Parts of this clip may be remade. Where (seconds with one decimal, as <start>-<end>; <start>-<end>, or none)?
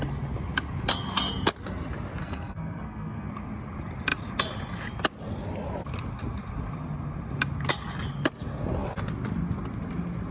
2.2-3.3